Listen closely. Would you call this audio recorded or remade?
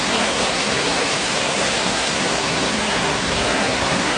remade